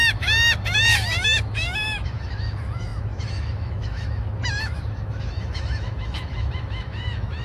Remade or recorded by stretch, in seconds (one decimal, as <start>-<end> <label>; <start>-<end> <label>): 0.0-7.4 remade